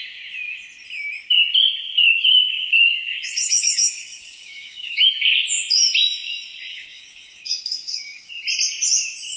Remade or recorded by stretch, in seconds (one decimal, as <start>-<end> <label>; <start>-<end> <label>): 0.0-2.0 recorded; 2.0-5.1 remade; 5.1-6.7 recorded; 6.7-8.3 remade; 8.3-9.4 recorded